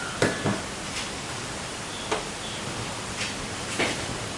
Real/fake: fake